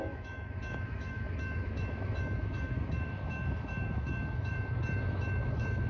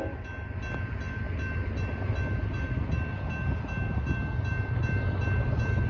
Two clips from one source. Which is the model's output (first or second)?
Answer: first